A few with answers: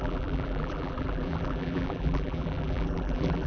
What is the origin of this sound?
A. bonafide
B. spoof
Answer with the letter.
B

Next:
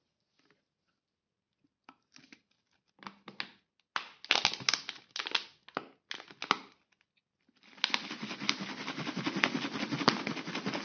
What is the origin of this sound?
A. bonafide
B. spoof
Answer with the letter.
A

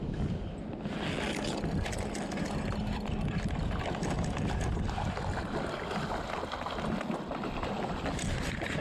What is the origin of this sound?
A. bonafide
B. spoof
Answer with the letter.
A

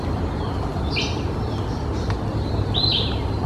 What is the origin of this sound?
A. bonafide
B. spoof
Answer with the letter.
A